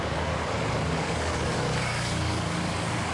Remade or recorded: remade